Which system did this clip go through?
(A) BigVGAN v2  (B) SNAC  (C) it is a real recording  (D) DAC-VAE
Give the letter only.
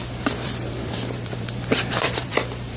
A